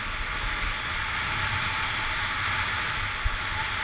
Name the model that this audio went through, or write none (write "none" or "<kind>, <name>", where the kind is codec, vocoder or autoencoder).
none